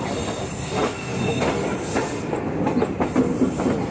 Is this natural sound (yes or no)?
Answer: yes